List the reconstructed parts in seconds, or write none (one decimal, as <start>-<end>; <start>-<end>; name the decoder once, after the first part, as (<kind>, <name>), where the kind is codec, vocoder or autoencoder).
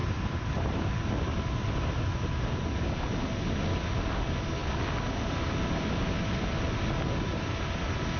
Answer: 0.0-0.8 (vocoder, BigVGAN v2)